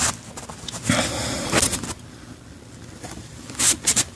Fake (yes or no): no